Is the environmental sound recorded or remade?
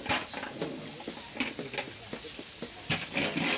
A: recorded